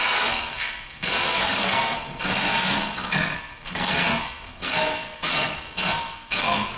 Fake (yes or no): yes